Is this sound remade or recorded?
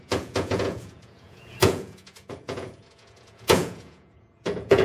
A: remade